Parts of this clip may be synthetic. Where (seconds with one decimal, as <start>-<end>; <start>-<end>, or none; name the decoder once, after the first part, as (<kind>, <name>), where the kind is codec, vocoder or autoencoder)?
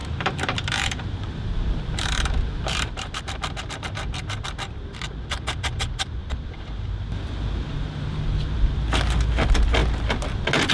0.0-3.2 (vocoder, BigVGAN v2)